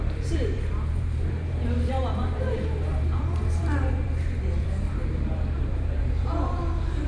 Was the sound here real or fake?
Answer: fake